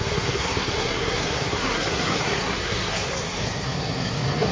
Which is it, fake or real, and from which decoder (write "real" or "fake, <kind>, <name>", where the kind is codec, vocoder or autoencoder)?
fake, codec, SNAC